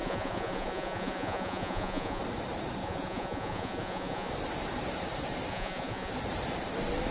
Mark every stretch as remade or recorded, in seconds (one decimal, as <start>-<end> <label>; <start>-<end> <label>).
0.0-2.2 remade; 2.2-2.8 recorded; 2.8-4.3 remade; 4.3-5.5 recorded; 5.5-6.1 remade; 6.1-7.1 recorded